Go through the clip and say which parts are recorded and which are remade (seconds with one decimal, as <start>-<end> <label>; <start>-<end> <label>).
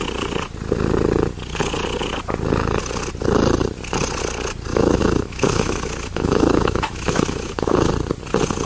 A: 0.0-4.7 recorded; 4.7-7.9 remade; 7.9-8.7 recorded